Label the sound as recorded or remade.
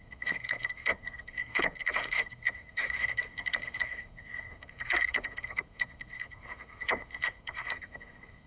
remade